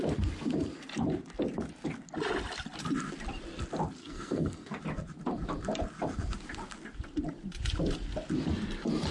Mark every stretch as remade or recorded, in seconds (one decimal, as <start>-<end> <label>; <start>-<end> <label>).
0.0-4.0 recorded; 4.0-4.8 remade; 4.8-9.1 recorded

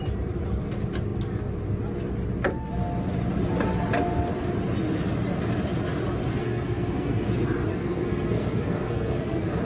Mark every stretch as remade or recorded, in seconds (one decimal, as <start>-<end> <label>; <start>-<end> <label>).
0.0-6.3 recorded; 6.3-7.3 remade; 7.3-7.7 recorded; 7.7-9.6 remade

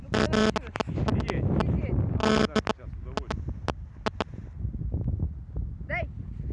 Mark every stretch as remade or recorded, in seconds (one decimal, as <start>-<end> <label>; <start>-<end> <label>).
0.0-6.5 recorded

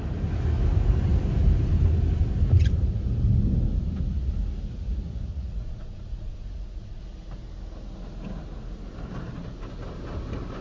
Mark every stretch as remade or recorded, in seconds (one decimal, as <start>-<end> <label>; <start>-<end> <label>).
0.0-5.3 recorded; 5.3-7.0 remade; 7.0-10.6 recorded

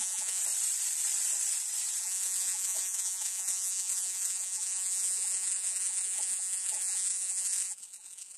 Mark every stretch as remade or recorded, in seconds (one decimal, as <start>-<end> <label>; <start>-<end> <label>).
0.0-0.4 remade; 0.4-2.0 recorded; 2.0-8.4 remade

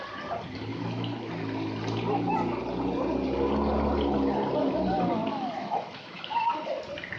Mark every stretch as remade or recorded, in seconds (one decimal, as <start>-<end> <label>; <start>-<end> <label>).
0.0-0.7 recorded; 0.7-1.3 remade; 1.3-5.3 recorded; 5.3-6.3 remade; 6.3-7.2 recorded